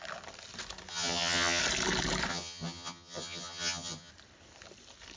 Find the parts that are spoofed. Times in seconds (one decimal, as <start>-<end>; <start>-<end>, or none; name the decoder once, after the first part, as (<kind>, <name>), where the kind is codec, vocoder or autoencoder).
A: 0.9-1.6 (vocoder, HiFi-GAN); 2.3-4.1